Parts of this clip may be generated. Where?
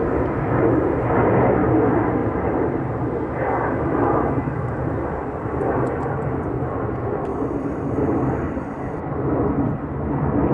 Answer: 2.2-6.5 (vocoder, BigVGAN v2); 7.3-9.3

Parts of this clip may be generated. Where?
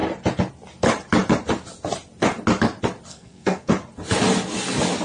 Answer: 3.1-3.7 (codec, SNAC)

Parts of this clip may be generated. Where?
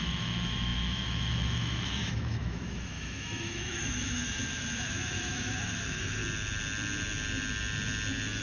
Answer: 0.0-6.2 (autoencoder, DAC-VAE)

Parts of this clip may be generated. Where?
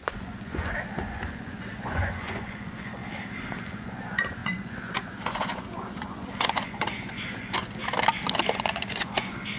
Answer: 0.0-3.0 (vocoder, Vocos); 3.6-7.8; 8.5-9.6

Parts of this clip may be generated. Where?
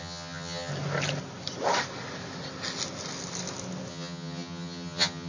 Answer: 0.0-0.7 (vocoder, HiFi-GAN); 3.9-5.3